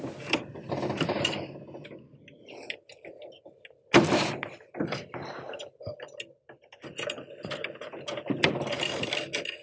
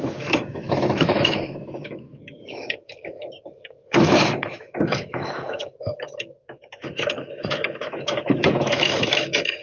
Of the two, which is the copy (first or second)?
second